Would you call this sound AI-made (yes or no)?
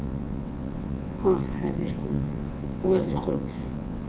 yes